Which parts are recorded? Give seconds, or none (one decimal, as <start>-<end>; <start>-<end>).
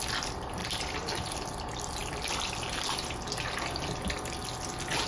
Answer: 0.0-5.1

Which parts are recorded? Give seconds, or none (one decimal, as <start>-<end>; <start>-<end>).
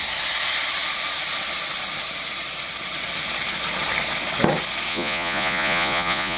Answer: 0.0-4.9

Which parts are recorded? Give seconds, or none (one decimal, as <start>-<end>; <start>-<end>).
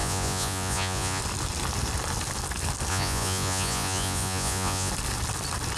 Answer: 1.2-2.9; 4.9-5.8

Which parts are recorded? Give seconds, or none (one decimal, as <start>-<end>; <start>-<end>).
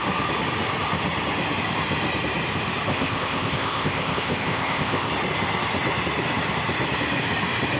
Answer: 0.0-2.9; 5.1-7.8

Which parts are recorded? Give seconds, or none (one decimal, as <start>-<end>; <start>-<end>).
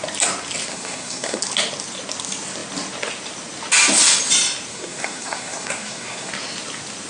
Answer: 0.0-0.7; 1.4-4.7; 6.3-7.1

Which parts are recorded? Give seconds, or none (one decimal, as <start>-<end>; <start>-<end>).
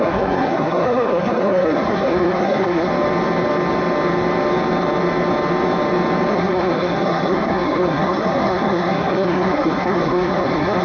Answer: 2.9-6.3